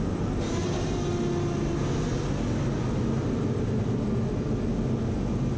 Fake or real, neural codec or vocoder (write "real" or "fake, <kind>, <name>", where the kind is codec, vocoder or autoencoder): real